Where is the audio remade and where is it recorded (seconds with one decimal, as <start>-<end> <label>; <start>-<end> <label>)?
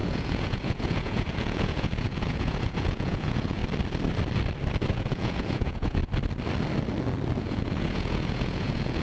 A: 0.0-3.6 remade; 3.6-4.9 recorded; 4.9-6.0 remade; 6.0-7.4 recorded; 7.4-9.0 remade